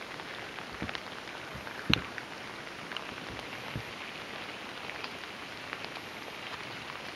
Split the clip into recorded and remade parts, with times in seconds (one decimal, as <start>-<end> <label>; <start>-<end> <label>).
0.0-1.5 recorded; 1.5-2.2 remade; 2.2-7.2 recorded